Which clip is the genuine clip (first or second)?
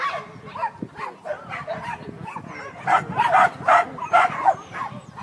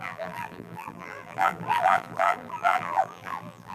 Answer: first